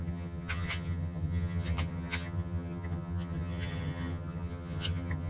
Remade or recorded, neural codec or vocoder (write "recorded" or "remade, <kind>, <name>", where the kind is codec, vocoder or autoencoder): remade, vocoder, HiFi-GAN